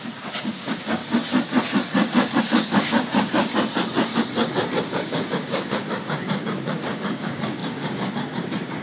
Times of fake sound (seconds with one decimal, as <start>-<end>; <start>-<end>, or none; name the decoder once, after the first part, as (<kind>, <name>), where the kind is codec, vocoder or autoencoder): 0.0-1.0 (codec, DAC); 2.4-3.5; 4.8-8.8